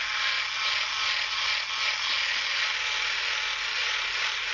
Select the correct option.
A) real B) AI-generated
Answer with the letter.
A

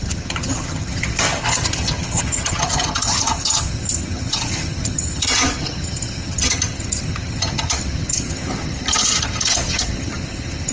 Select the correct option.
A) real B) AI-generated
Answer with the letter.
B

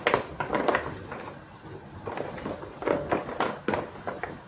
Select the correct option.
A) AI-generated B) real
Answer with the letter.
B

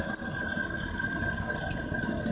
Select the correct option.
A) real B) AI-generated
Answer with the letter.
A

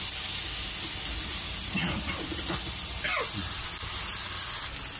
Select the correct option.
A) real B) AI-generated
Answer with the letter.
A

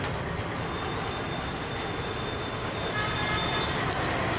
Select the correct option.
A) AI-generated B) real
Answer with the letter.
B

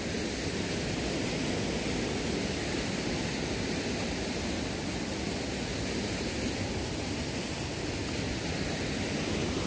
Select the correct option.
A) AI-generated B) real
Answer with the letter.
B